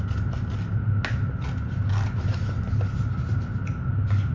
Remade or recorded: recorded